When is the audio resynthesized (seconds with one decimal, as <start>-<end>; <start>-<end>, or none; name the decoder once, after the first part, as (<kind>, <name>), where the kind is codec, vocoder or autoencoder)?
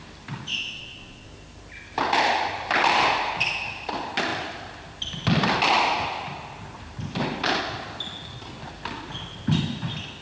0.5-1.3 (vocoder, Vocos)